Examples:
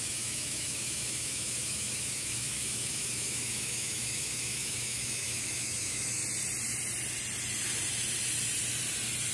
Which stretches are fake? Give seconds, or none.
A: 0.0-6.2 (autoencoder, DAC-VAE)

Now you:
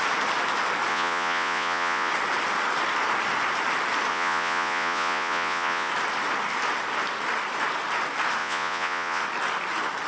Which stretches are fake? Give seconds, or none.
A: 0.9-2.1 (vocoder, Vocos); 4.1-5.9; 8.4-9.2

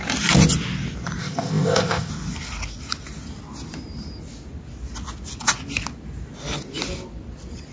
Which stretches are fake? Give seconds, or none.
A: 1.2-2.1 (codec, ZipCodec)

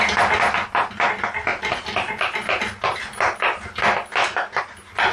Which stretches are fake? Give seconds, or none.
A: none

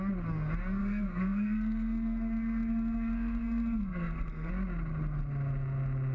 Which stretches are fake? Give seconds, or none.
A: 0.8-4.5 (codec, SNAC)